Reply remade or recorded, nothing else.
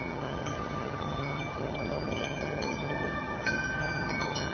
remade